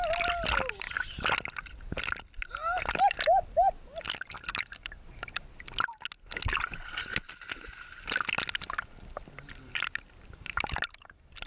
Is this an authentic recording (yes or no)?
yes